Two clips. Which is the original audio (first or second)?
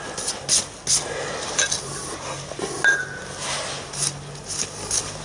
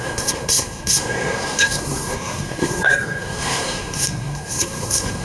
first